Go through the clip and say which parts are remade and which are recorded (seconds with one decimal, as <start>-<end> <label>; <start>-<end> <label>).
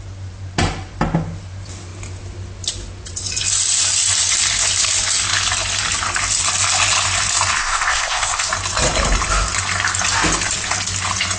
0.0-7.6 recorded; 7.6-8.5 remade; 8.5-11.4 recorded